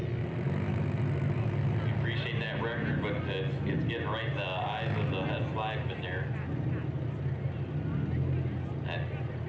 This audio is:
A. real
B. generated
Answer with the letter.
A